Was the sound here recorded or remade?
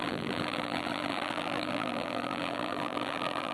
remade